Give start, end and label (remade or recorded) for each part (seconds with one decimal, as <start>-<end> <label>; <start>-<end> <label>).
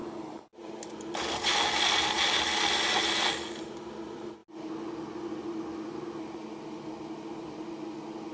0.0-8.3 recorded